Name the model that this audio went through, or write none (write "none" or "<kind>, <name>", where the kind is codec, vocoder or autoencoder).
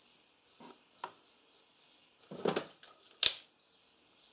none